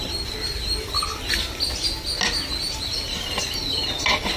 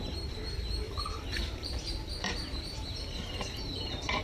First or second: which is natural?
first